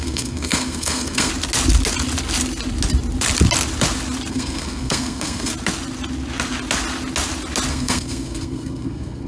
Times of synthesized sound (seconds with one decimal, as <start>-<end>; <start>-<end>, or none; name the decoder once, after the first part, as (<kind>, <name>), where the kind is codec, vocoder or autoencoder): 0.0-1.3 (codec, SNAC); 4.3-5.5; 7.7-9.3